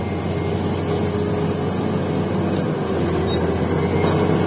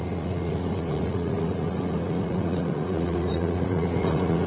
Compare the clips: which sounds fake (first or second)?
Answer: second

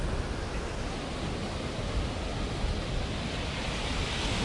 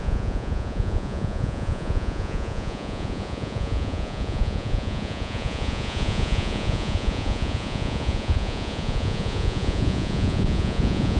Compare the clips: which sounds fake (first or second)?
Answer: second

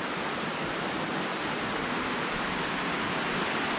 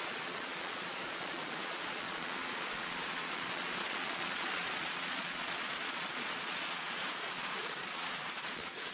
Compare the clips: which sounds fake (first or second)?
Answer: second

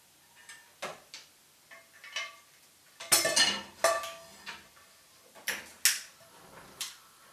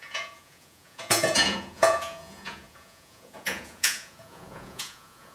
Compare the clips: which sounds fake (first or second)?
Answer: second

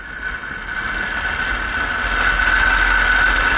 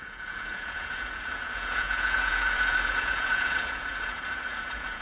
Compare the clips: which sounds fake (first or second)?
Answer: second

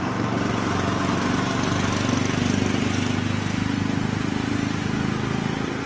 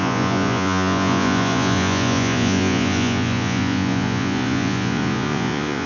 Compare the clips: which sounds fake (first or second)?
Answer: second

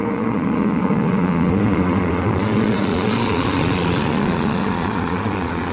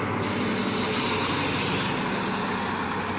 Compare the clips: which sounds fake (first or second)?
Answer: first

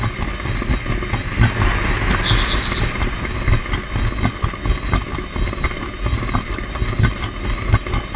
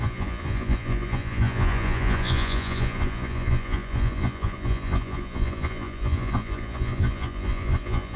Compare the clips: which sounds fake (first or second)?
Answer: second